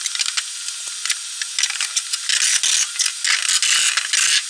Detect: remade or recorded recorded